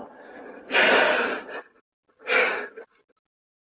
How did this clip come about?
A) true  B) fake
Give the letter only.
A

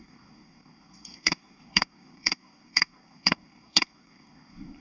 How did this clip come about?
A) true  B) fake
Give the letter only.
B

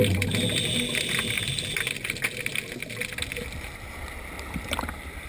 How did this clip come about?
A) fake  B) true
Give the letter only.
B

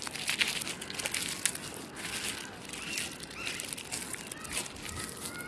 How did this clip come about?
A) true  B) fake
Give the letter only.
A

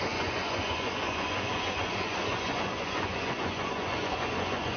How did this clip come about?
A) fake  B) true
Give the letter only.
A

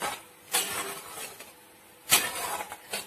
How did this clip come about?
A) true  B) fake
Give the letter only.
A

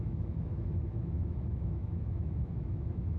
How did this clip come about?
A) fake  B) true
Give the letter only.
A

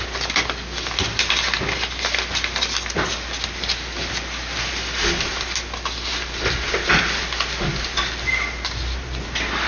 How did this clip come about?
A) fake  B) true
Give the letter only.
B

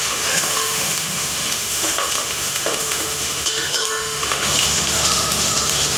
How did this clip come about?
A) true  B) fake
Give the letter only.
B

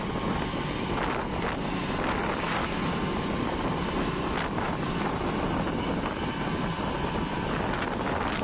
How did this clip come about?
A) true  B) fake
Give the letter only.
A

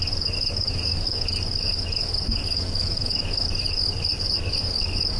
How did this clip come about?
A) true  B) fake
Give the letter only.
B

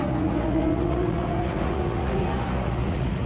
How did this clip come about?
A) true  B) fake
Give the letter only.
B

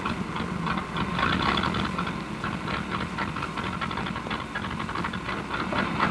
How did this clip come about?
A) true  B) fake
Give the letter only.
A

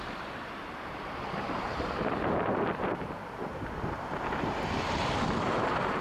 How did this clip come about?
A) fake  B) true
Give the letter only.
A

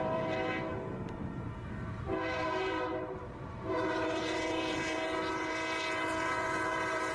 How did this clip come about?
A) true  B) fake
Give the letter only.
B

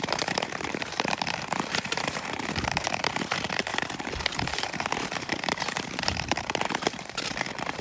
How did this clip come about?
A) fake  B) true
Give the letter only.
A